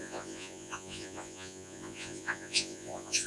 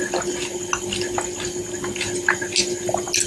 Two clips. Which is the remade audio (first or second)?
first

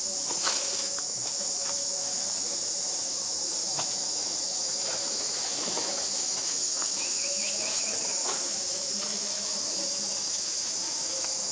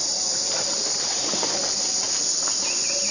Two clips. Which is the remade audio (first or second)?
first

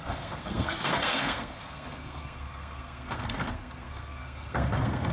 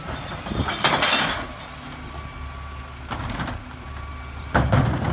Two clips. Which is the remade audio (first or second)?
first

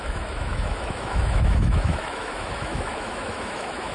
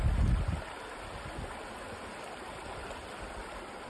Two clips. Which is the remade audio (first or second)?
first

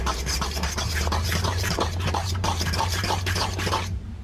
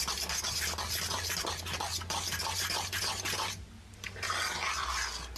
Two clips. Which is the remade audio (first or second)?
first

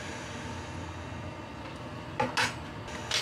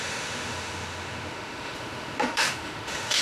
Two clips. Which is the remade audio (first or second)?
second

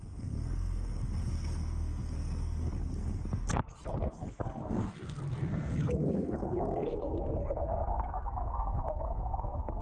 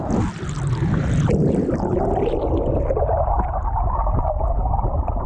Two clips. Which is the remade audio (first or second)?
first